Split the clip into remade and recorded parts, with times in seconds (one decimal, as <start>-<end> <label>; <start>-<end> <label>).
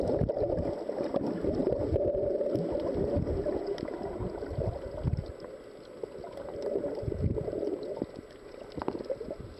0.0-9.6 recorded